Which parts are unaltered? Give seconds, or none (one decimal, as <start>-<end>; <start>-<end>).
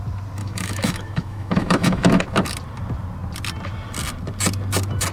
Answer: 0.0-0.4; 2.2-5.1